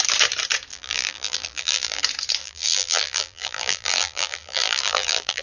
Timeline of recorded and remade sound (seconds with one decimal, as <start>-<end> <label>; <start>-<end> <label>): 0.0-0.7 recorded; 0.7-2.0 remade; 2.0-2.4 recorded; 2.4-5.4 remade